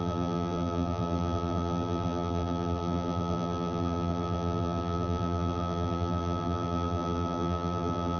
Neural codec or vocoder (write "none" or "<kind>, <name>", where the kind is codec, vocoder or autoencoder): vocoder, BigVGAN v2